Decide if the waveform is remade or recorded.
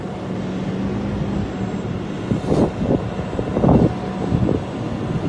recorded